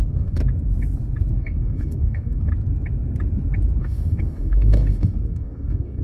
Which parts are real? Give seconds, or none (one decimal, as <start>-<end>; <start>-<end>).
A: 0.4-1.3; 2.5-3.8